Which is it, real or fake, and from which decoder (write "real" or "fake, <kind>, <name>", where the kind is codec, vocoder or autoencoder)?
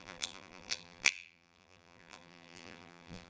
fake, vocoder, BigVGAN v2